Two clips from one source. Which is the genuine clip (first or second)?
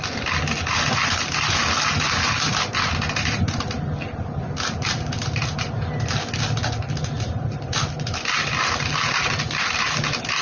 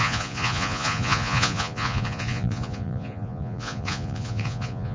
first